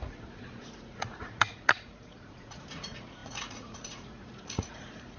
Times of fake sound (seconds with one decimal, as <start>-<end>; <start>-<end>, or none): 0.0-5.2